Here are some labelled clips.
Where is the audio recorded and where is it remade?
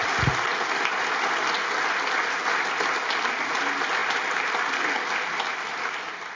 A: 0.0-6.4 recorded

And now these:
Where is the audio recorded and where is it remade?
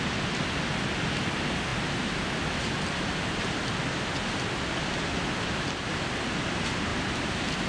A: 0.0-7.7 recorded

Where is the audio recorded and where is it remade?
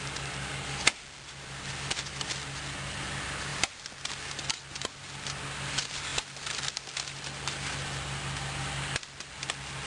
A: 0.0-3.5 recorded; 3.5-4.1 remade; 4.1-6.1 recorded; 6.1-9.3 remade; 9.3-9.9 recorded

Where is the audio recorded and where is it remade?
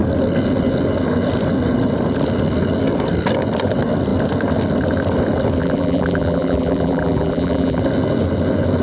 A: 0.0-5.6 recorded; 5.6-7.8 remade; 7.8-8.8 recorded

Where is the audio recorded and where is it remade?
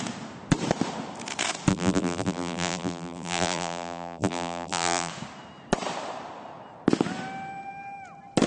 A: 0.0-1.7 recorded; 1.7-5.1 remade; 5.1-8.5 recorded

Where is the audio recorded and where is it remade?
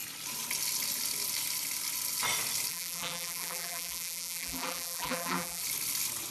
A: 0.0-2.7 recorded; 2.7-5.6 remade; 5.6-6.3 recorded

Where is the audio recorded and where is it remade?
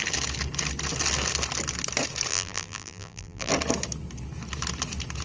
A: 0.0-2.3 recorded; 2.3-3.5 remade; 3.5-5.2 recorded